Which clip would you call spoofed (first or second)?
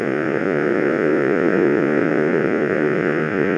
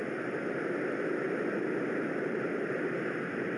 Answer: first